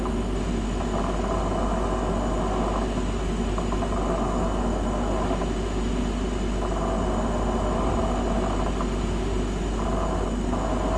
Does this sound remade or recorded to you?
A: recorded